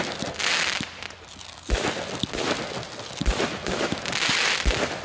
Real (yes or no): yes